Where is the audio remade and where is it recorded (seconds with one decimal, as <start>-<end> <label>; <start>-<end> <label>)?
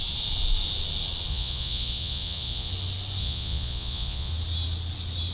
0.0-1.3 recorded; 1.3-2.7 remade; 2.7-3.2 recorded; 3.2-4.3 remade; 4.3-5.3 recorded